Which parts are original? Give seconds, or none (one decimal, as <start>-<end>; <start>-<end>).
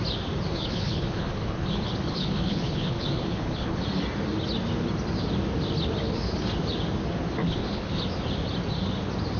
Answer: 0.0-0.5; 3.8-7.4; 8.0-9.4